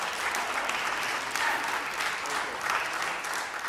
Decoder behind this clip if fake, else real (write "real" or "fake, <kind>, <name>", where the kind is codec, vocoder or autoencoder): real